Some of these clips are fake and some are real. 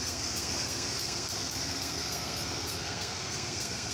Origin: fake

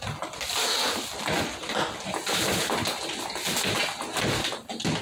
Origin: real